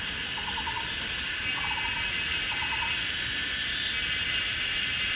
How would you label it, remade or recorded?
recorded